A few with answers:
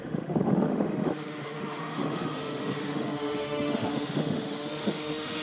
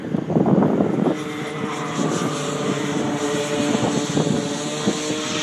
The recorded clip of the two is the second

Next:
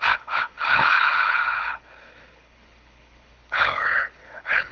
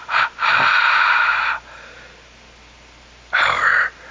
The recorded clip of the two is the second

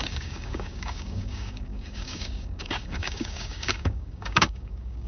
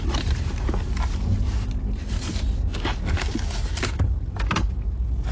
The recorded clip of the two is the second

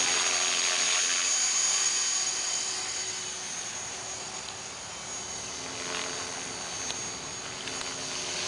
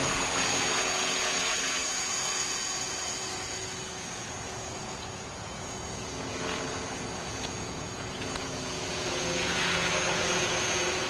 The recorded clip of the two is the first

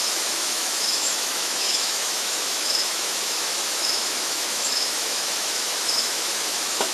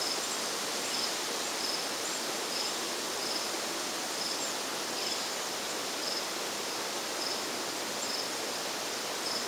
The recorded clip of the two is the second